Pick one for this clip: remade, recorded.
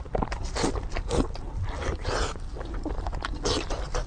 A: recorded